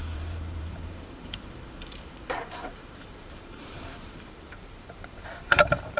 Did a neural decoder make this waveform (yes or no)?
yes